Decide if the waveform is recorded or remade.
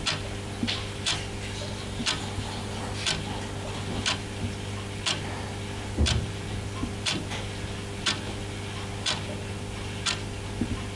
recorded